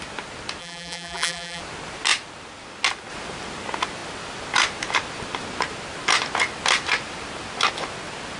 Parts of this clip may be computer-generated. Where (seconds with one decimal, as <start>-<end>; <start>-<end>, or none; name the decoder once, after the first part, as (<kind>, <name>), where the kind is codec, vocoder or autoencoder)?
0.6-1.6 (vocoder, BigVGAN v2)